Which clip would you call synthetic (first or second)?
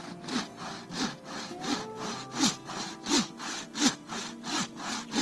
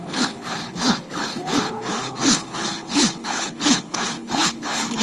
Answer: second